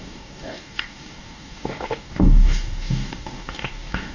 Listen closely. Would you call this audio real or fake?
fake